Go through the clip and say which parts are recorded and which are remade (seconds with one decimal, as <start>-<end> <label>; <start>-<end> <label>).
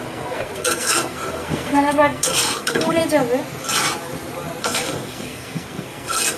0.0-3.0 remade; 3.0-4.6 recorded; 4.6-6.4 remade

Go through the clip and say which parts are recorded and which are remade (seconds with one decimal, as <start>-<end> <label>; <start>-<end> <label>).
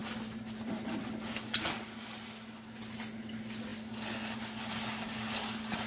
0.0-5.9 recorded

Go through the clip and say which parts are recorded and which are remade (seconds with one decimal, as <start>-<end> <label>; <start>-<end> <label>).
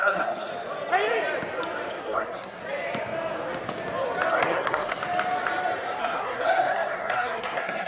0.0-0.5 remade; 0.5-2.0 recorded; 2.0-2.6 remade; 2.6-4.3 recorded; 4.3-5.0 remade; 5.0-6.0 recorded; 6.0-7.9 remade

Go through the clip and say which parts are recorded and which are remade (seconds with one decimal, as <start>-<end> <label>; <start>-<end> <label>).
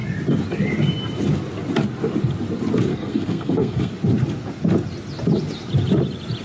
0.0-2.9 recorded; 2.9-3.9 remade; 3.9-6.4 recorded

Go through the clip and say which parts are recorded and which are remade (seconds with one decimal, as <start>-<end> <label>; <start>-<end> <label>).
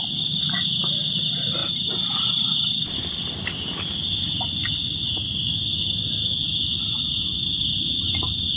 0.0-8.6 recorded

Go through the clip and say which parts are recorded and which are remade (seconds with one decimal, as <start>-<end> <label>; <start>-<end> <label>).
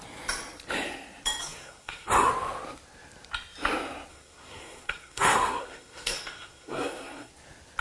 0.0-1.4 recorded; 1.4-2.3 remade; 2.3-4.1 recorded; 4.1-7.3 remade; 7.3-7.8 recorded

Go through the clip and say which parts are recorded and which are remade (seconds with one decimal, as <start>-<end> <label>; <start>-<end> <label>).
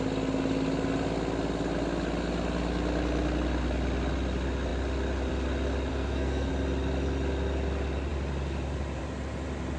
0.0-5.9 recorded; 5.9-6.5 remade; 6.5-9.8 recorded